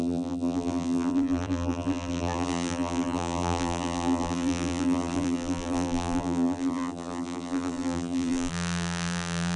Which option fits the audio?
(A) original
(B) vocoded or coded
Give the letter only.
B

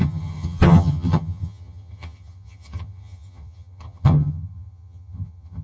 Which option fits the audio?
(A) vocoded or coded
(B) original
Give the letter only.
A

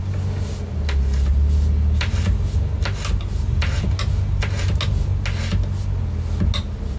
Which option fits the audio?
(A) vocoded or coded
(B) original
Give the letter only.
B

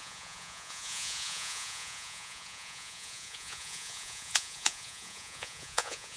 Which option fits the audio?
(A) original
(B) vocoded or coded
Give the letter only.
B